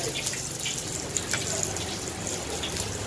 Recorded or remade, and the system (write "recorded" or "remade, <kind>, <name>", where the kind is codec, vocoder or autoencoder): recorded